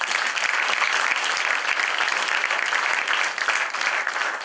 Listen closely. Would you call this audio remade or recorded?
recorded